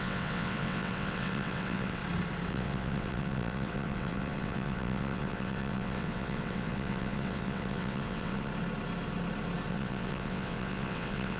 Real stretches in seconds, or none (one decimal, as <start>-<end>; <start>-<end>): 2.0-2.5; 8.5-9.7